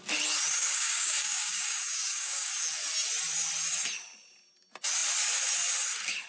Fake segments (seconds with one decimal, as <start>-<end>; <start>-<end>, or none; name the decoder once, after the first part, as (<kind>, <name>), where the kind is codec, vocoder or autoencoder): 0.6-2.5 (codec, DAC)